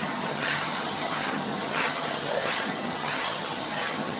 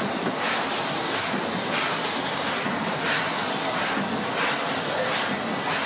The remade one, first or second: first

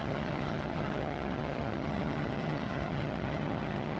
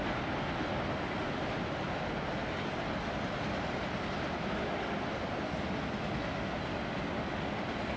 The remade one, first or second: first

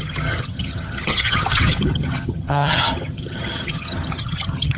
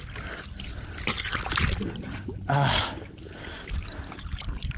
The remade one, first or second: first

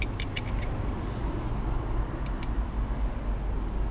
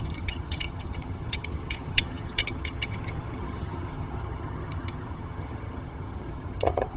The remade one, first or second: second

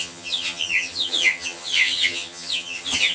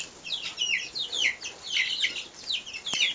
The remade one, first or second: first